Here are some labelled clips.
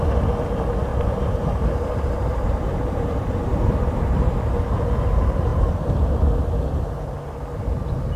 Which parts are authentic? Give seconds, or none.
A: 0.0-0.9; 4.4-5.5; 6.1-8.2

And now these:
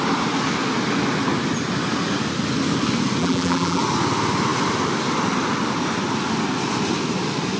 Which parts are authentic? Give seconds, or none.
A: 0.0-3.2; 3.8-7.6

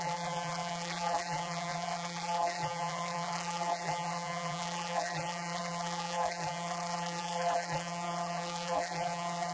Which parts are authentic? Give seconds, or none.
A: none

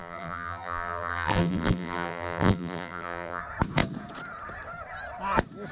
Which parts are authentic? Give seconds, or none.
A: 3.4-5.7

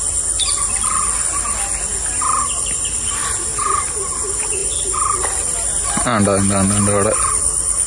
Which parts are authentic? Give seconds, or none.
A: 0.0-3.5; 4.1-7.9